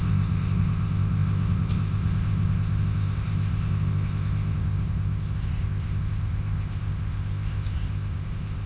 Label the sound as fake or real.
fake